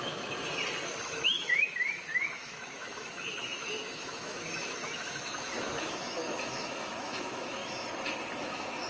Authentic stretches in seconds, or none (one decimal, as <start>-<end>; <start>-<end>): 0.4-1.0; 7.6-8.4